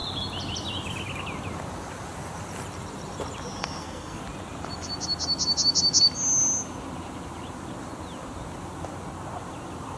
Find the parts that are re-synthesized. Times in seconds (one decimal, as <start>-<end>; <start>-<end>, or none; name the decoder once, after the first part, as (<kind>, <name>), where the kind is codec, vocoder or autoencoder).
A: 3.6-4.2 (codec, SNAC)